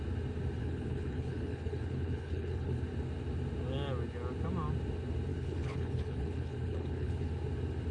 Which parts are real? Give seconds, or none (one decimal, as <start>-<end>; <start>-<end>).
0.0-0.6; 2.8-5.3; 7.3-7.9